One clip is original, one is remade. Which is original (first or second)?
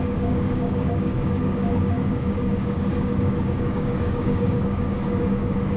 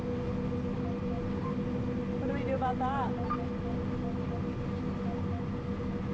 second